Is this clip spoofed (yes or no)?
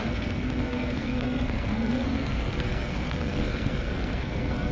yes